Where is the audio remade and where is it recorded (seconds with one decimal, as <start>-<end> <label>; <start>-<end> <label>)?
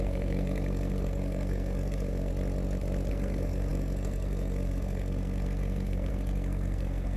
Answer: 0.0-2.3 remade; 2.3-3.1 recorded; 3.1-7.2 remade